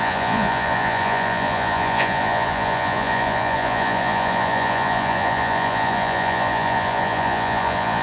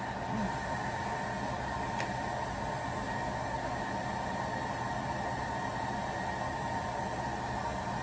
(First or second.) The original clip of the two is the second